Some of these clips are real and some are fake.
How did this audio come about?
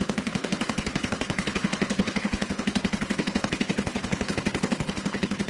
fake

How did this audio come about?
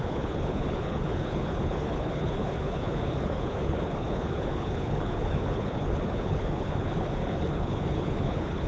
fake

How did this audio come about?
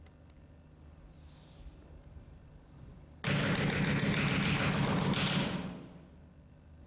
real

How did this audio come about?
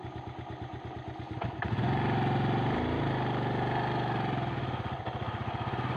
real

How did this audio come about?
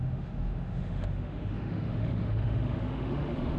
fake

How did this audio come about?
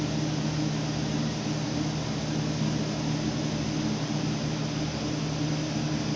real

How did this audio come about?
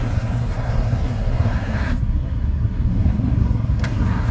fake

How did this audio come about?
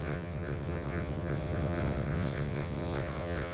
fake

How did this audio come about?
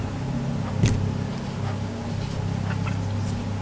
real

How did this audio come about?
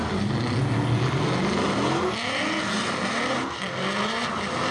real